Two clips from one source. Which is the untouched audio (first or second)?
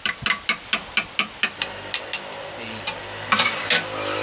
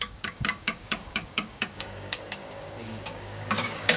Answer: first